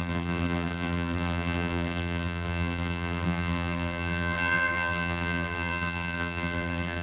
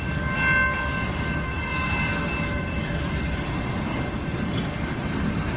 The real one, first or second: second